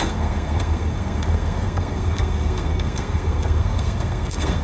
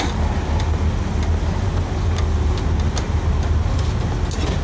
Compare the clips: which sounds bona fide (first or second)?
second